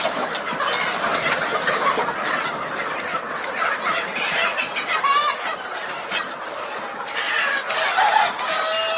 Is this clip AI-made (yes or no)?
no